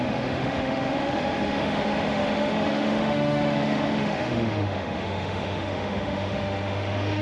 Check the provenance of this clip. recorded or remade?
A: remade